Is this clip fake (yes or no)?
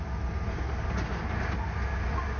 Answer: no